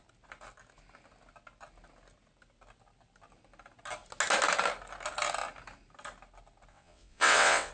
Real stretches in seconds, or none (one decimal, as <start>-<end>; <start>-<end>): 0.0-6.7